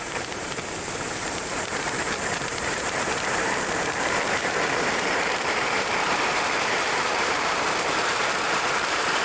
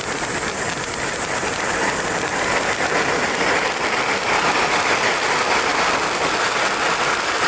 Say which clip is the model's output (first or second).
first